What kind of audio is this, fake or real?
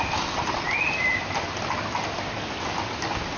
real